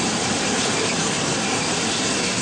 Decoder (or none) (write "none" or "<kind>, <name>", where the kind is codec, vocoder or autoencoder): vocoder, BigVGAN v2